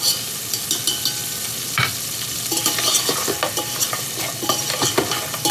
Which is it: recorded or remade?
recorded